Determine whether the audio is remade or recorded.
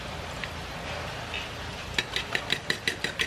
recorded